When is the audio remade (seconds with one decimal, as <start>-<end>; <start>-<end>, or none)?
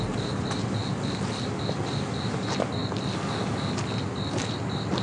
none